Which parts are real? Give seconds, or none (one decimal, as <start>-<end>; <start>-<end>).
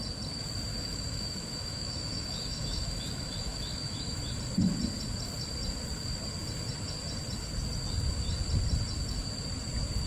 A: 0.0-0.7; 4.2-10.1